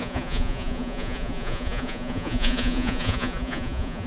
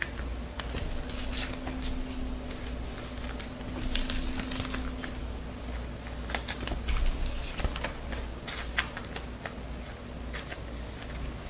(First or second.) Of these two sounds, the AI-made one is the first